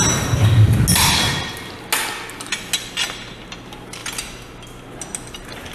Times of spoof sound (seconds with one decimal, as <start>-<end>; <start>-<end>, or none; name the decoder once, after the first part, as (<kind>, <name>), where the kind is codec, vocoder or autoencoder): none

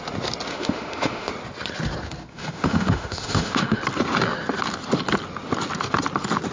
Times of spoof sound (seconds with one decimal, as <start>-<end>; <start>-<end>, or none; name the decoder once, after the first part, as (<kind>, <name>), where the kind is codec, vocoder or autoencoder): 0.5-1.3 (autoencoder, DAC-VAE); 2.3-3.8